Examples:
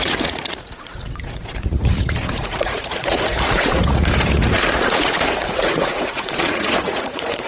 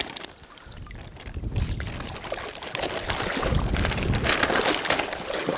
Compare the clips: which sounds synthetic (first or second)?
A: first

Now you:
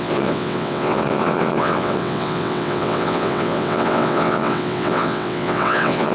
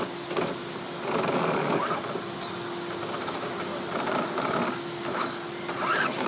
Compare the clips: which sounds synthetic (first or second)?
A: first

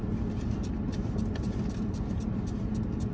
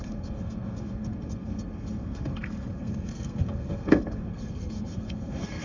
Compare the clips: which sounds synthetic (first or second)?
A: second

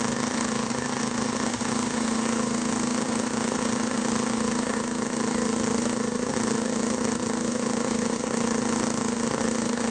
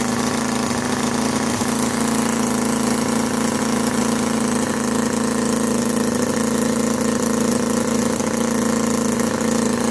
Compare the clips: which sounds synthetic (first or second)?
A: first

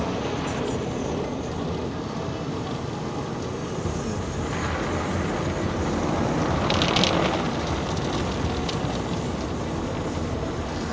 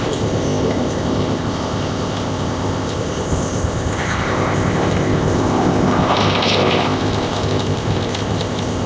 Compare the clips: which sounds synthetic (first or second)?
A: second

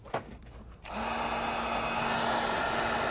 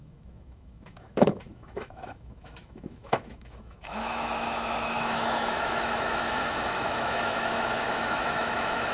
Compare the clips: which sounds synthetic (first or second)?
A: second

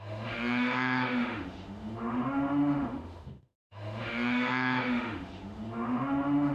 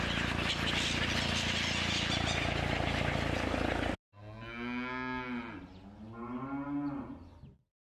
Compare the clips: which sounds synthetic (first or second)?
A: first